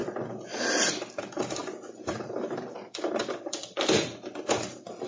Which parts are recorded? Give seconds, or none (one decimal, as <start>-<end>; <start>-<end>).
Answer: 0.0-1.2